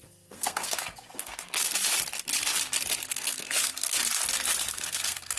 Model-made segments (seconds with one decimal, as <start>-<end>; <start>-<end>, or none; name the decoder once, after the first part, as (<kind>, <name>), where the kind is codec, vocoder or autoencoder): 0.0-1.7 (codec, SNAC); 3.1-4.0; 4.7-5.4